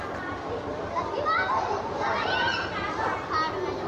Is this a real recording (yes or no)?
yes